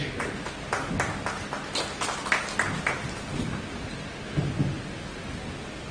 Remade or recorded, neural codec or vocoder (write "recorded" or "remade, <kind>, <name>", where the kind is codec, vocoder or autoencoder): recorded